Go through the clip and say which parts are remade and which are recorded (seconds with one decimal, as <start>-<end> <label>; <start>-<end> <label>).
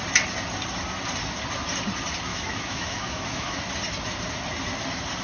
0.0-2.3 recorded; 2.3-3.6 remade; 3.6-5.2 recorded